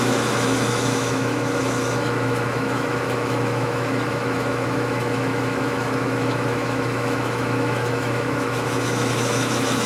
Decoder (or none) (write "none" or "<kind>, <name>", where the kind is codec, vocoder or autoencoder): autoencoder, DAC-VAE